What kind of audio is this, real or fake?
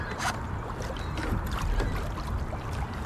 real